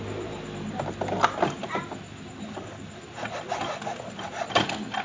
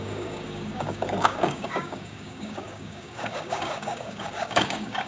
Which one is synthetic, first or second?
second